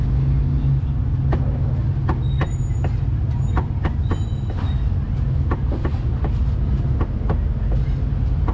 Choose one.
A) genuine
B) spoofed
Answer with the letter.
A